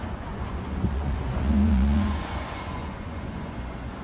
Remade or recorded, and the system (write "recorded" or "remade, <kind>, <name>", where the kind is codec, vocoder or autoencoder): remade, vocoder, Vocos